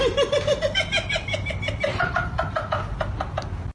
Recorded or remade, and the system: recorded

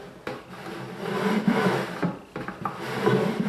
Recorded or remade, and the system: recorded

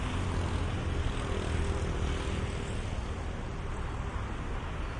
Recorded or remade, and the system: recorded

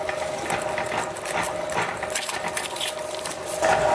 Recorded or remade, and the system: recorded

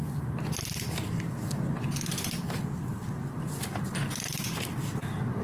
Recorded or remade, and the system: recorded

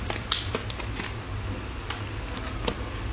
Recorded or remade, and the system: recorded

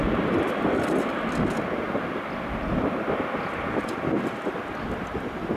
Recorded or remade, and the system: recorded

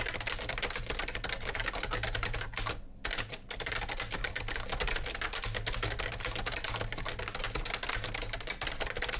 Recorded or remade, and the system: recorded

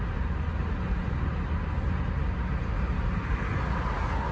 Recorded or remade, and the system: recorded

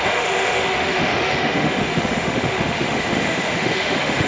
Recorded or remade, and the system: remade, autoencoder, DAC-VAE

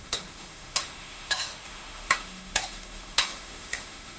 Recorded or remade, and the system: remade, autoencoder, DAC-VAE